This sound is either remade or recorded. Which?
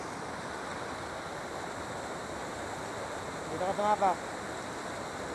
recorded